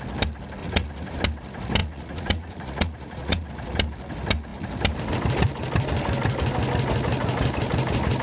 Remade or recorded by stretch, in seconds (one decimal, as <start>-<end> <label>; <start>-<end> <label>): 0.0-0.6 recorded; 0.6-1.2 remade; 1.2-1.8 recorded; 1.8-3.5 remade; 3.5-8.2 recorded